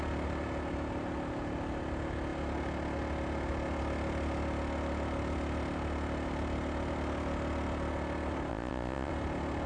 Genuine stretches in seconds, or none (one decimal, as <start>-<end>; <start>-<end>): 0.0-8.5; 9.1-9.7